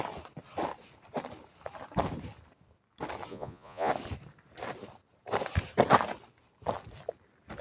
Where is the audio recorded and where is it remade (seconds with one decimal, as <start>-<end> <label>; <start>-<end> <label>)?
0.0-3.3 recorded; 3.3-3.9 remade; 3.9-7.6 recorded

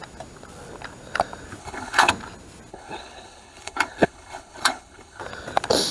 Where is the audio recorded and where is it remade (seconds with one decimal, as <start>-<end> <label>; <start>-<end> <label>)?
0.0-1.6 recorded; 1.6-2.1 remade; 2.1-2.7 recorded; 2.7-5.2 remade; 5.2-5.9 recorded

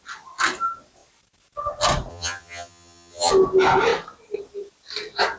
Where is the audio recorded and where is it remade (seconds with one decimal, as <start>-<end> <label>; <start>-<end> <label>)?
0.0-2.1 recorded; 2.1-3.3 remade; 3.3-5.4 recorded

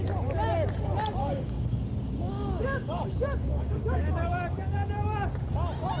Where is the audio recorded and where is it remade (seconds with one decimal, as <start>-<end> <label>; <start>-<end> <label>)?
0.0-1.2 recorded; 1.2-1.8 remade; 1.8-2.3 recorded; 2.3-3.0 remade; 3.0-3.5 recorded; 3.5-4.3 remade; 4.3-6.0 recorded

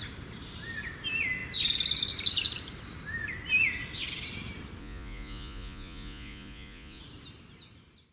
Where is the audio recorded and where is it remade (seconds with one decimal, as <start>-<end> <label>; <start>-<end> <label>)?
0.0-4.8 recorded; 4.8-7.0 remade; 7.0-8.1 recorded

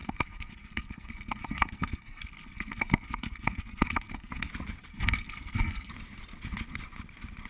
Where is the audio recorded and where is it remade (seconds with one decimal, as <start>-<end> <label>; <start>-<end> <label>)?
0.0-4.5 remade; 4.5-4.9 recorded; 4.9-5.9 remade; 5.9-7.5 recorded